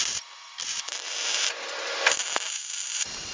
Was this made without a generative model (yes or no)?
no